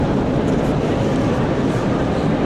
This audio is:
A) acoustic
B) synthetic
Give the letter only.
B